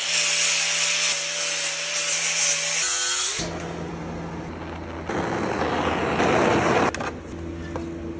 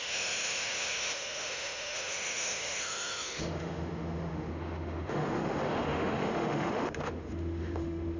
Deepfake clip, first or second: second